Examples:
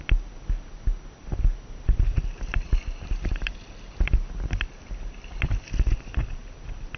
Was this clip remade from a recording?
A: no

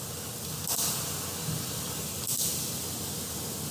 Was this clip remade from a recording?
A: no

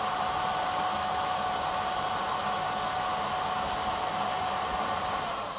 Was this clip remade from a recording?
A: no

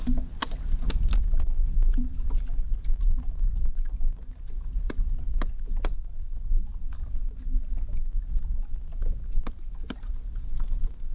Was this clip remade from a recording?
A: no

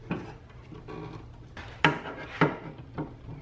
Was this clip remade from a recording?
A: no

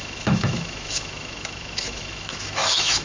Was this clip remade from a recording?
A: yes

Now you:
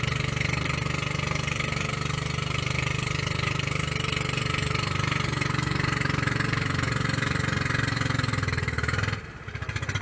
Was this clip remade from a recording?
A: yes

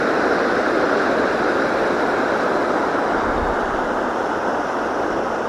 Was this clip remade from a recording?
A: no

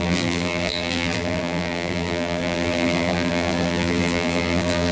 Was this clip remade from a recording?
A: yes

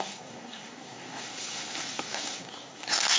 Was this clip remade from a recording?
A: yes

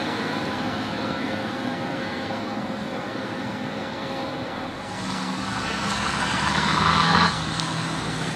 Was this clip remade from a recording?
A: yes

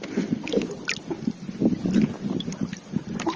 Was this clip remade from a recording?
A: no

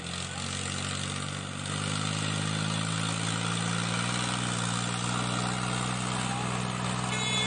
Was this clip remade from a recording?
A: no